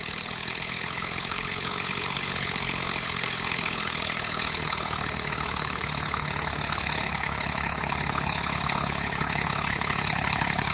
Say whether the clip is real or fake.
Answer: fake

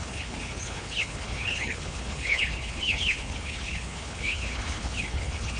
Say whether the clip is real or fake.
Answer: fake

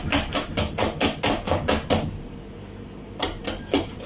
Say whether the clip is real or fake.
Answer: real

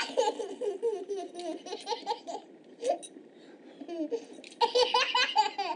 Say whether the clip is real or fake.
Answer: real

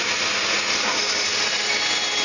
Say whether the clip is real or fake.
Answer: real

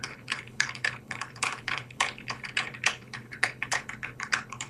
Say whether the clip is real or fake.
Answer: fake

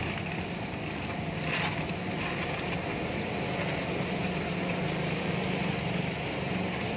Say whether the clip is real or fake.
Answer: real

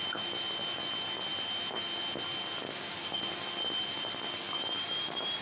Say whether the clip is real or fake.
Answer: real